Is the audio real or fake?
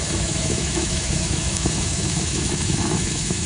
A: fake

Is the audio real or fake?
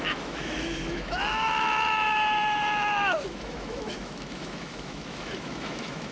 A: fake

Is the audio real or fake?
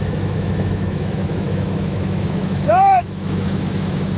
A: fake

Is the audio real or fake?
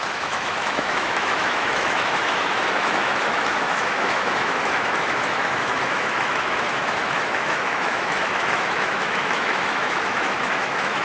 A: fake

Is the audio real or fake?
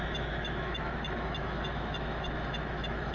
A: fake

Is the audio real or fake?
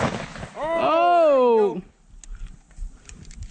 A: real